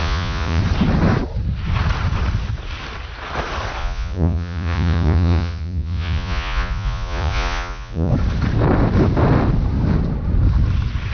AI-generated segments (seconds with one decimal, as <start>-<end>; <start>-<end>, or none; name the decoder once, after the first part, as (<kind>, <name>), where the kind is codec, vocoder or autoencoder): 0.0-0.6 (vocoder, Vocos); 3.8-8.1

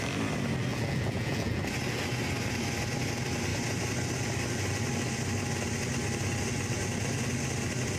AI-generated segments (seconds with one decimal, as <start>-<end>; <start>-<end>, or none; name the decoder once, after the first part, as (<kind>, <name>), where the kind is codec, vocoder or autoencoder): 0.7-1.6 (vocoder, Vocos)

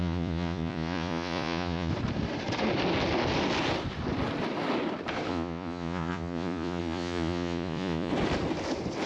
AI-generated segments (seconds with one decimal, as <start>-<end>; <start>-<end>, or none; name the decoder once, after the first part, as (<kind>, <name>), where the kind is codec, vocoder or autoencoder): 0.0-1.9 (vocoder, Vocos); 5.3-8.1

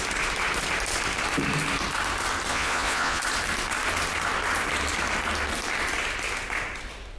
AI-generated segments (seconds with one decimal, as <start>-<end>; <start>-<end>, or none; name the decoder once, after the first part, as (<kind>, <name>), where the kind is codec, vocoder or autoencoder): 2.5-3.2 (vocoder, Vocos)

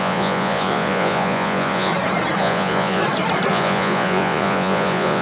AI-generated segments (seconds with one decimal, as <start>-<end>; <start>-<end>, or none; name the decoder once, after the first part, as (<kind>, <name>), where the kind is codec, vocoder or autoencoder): 0.0-1.9 (vocoder, Vocos); 2.4-3.0; 3.5-5.2

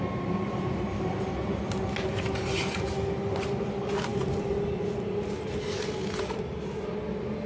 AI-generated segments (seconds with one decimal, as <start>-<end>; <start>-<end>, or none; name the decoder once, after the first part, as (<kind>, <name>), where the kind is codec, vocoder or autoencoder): none

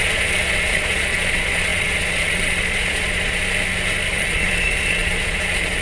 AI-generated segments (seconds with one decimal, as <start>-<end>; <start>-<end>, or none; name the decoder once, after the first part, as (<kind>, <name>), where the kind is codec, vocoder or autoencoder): 0.0-3.4 (vocoder, Vocos); 4.1-5.8

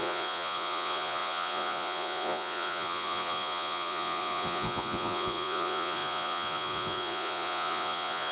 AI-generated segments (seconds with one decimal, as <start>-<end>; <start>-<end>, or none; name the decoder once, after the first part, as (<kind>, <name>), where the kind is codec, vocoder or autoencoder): 0.0-8.3 (vocoder, Vocos)